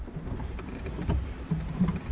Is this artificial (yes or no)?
no